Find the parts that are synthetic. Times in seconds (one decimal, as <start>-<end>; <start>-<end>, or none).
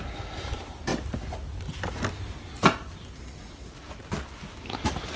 none